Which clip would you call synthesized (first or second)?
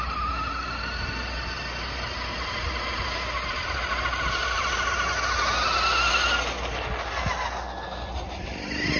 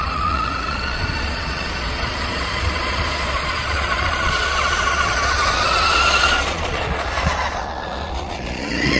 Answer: second